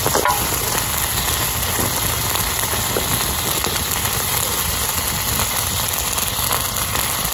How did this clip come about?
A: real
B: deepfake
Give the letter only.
A